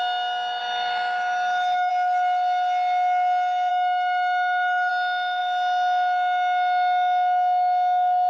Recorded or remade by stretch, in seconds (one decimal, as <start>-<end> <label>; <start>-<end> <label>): 0.0-0.6 recorded; 0.6-1.9 remade; 1.9-3.7 recorded; 3.7-4.9 remade; 4.9-8.3 recorded